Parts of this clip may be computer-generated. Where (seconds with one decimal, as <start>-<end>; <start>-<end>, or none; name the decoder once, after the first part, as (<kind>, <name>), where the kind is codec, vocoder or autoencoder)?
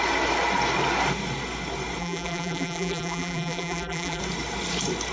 2.0-4.2 (vocoder, BigVGAN v2)